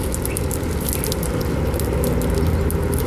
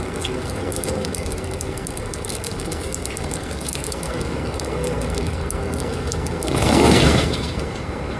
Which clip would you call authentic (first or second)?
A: first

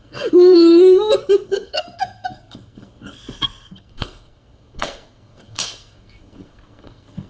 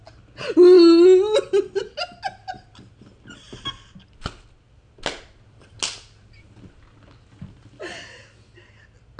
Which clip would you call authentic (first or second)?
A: second